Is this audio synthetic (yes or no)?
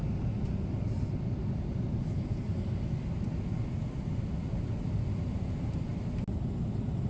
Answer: no